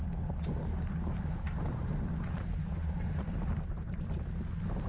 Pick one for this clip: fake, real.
real